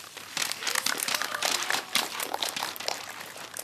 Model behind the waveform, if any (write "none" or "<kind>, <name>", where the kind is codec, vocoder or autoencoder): vocoder, BigVGAN v2